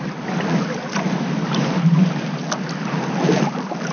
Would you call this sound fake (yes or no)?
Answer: no